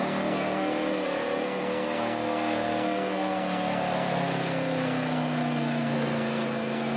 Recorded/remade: remade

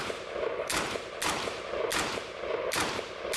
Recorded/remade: recorded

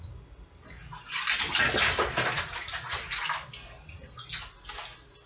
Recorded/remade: recorded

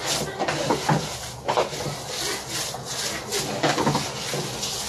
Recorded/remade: recorded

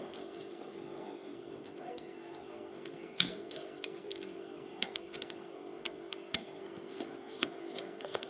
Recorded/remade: remade